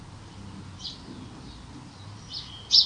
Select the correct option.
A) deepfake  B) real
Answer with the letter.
B